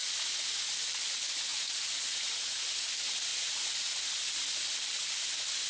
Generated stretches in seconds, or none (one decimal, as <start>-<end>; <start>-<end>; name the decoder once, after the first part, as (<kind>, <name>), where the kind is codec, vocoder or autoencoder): 0.0-0.7 (vocoder, Vocos); 1.5-2.9; 3.3-4.1